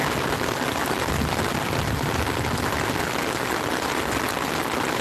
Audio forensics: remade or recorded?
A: recorded